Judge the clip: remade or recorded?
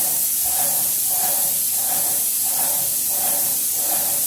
recorded